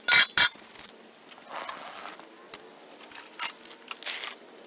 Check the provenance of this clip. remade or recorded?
recorded